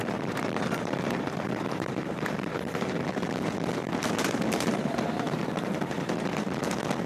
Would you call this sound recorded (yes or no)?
no